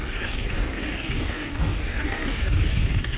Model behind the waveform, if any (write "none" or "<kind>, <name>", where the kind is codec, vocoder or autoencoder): codec, DAC